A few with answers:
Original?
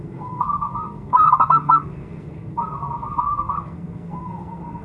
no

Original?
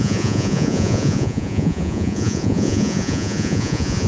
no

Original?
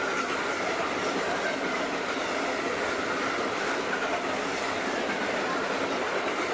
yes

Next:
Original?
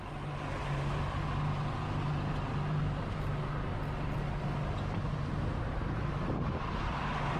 yes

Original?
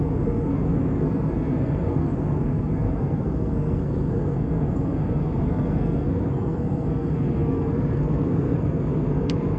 no